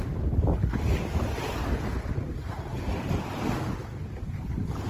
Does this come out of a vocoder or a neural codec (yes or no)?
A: no